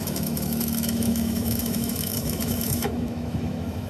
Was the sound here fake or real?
fake